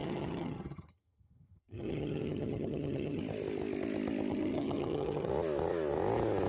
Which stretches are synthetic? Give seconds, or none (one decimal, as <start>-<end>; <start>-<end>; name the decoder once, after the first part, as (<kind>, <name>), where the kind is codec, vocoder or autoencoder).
0.0-3.2 (vocoder, HiFi-GAN); 4.3-5.3